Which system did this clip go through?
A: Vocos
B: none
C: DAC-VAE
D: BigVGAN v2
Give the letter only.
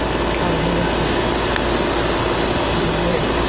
B